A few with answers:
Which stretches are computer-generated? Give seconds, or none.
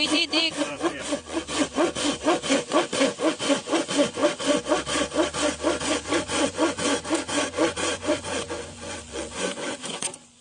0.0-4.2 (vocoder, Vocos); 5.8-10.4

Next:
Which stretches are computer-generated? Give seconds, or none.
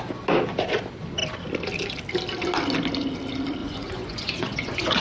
3.6-5.0 (vocoder, Vocos)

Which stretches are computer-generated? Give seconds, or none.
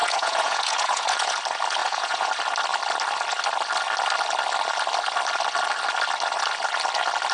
0.0-1.4 (vocoder, Vocos); 1.8-2.3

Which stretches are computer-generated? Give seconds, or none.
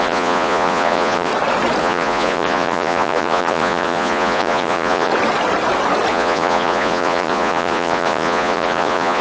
0.0-1.3 (vocoder, Vocos); 1.8-5.1; 6.1-9.2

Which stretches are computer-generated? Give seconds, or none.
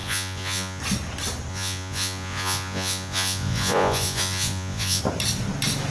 0.0-0.8 (vocoder, Vocos); 1.5-5.0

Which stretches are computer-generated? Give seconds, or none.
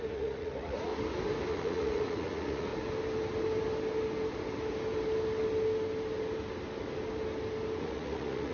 0.0-0.9 (vocoder, Vocos); 1.5-2.7; 7.8-8.5